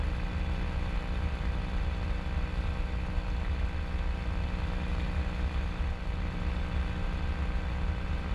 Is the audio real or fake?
real